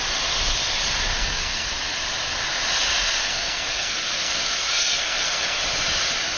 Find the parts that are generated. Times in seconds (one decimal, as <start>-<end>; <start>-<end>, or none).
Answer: 1.1-1.7; 3.2-5.6